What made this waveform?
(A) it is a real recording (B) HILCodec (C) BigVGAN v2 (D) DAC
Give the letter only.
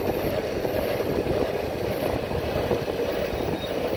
A